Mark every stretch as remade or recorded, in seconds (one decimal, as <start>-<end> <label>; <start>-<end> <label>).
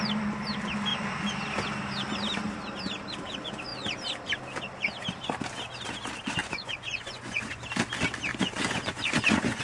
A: 0.0-6.4 recorded; 6.4-7.6 remade; 7.6-8.3 recorded; 8.3-9.6 remade